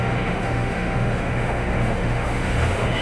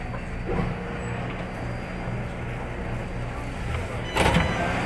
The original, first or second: second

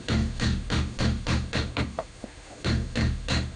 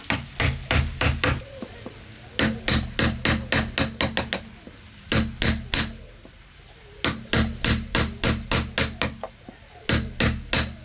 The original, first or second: second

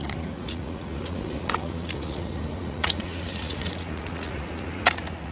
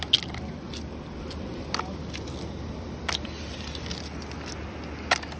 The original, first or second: second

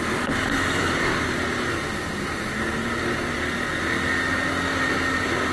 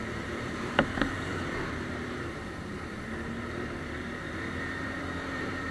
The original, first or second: first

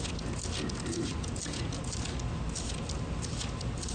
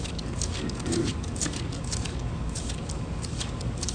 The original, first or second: first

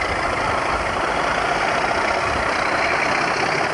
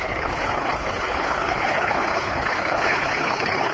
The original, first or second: first